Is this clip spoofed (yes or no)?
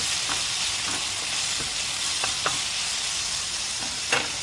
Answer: no